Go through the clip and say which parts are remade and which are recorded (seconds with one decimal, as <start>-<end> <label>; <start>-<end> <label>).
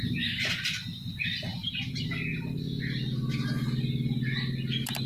0.0-5.1 recorded